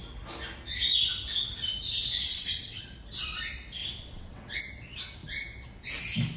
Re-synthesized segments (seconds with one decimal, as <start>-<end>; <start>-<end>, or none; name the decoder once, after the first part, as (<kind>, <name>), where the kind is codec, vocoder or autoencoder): 2.3-2.8 (vocoder, WaveNeXt); 3.8-4.6